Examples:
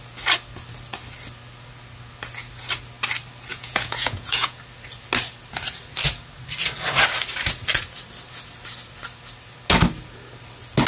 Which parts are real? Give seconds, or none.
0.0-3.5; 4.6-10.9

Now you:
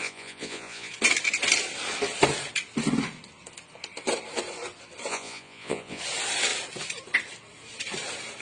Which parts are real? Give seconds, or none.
0.9-5.1; 6.0-8.4

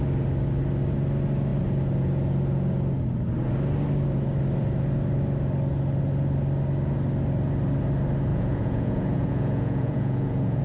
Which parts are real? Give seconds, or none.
0.0-8.3

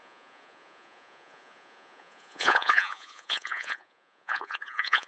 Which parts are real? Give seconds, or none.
none

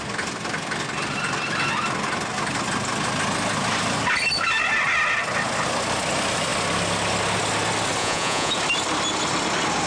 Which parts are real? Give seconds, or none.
0.0-8.0; 8.5-9.9

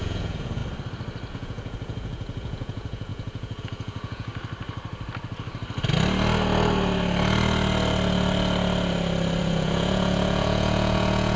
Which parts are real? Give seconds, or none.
0.6-1.3; 4.3-9.4